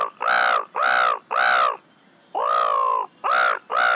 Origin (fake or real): real